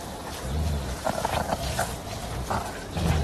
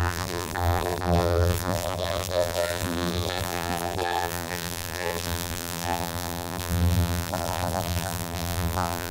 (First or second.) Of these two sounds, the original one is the first